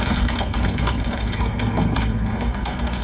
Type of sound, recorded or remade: remade